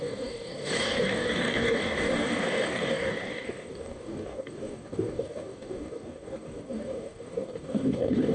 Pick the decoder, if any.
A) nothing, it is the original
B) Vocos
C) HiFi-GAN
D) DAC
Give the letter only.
D